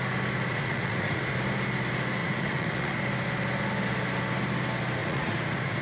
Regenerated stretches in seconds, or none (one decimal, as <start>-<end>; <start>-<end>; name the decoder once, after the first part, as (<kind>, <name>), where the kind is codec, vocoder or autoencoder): 0.5-1.3 (vocoder, Vocos); 2.2-3.0; 5.0-5.8